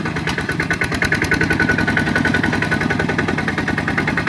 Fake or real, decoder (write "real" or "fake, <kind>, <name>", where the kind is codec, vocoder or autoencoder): real